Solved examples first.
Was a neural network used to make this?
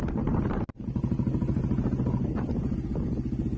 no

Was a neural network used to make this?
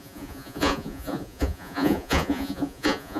yes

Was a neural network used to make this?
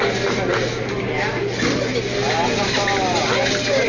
no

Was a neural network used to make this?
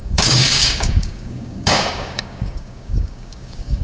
yes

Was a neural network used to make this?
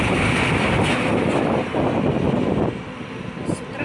no